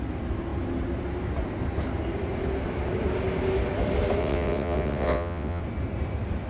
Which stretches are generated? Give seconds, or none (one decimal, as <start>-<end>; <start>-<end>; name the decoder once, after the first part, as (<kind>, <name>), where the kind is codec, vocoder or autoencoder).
4.2-5.6 (vocoder, WaveNeXt)